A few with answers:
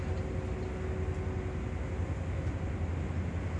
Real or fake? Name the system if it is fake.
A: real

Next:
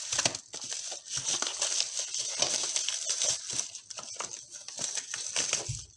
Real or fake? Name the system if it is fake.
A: real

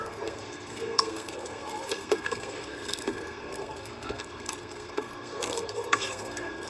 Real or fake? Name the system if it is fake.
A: fake, codec, SNAC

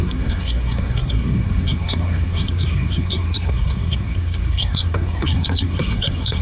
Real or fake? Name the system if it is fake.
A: fake, codec, SNAC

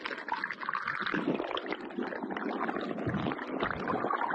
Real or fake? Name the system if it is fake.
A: real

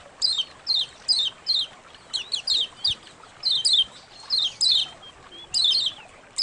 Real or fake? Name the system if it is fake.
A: real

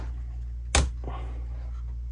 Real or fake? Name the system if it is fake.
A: real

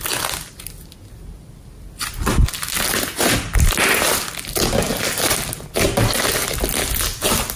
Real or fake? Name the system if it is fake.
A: real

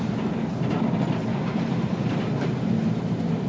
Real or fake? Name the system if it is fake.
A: real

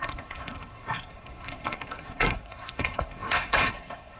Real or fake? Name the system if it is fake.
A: fake, codec, SNAC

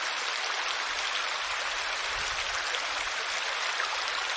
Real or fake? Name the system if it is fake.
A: real